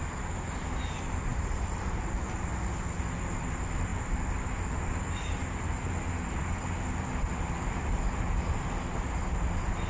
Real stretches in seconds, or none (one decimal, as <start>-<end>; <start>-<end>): 0.0-9.9